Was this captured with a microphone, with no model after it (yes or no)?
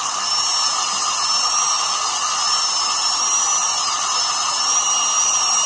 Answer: yes